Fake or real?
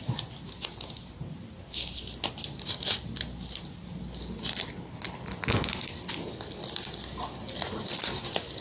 real